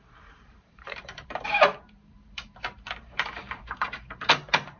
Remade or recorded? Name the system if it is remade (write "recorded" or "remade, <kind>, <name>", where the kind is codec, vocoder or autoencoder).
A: remade, vocoder, BigVGAN v2